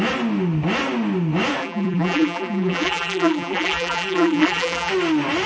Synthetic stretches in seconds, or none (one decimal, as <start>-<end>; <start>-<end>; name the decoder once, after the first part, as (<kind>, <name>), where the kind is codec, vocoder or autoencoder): 1.6-4.9 (vocoder, BigVGAN v2)